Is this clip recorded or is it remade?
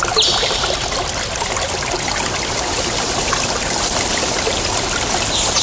recorded